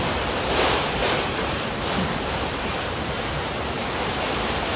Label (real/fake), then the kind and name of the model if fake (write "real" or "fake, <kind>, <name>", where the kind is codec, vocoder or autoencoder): fake, vocoder, BigVGAN v2